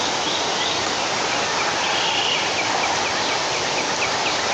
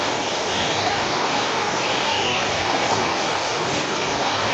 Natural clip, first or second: first